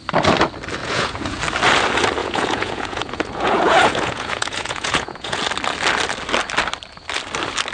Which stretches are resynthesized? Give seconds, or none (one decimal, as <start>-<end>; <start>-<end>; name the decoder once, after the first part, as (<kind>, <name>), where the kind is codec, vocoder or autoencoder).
0.8-1.4 (vocoder, Vocos); 2.2-5.4